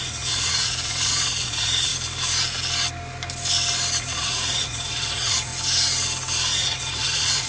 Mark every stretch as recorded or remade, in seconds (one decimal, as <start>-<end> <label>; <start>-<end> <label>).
0.0-1.9 remade; 1.9-4.0 recorded; 4.0-5.5 remade; 5.5-6.5 recorded; 6.5-7.5 remade